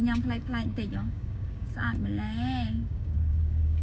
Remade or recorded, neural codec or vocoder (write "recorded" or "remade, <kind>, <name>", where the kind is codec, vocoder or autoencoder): remade, codec, DAC